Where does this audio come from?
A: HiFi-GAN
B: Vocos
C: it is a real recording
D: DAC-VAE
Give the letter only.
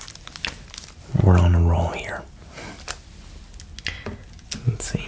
C